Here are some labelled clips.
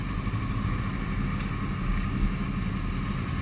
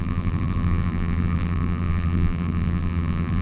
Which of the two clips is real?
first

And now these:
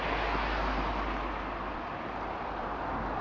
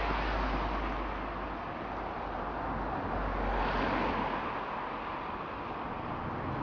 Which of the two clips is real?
second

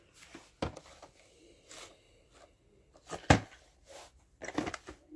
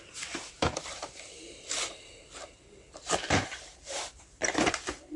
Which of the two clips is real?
first